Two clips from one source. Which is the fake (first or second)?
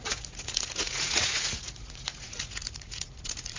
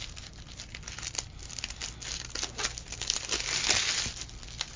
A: first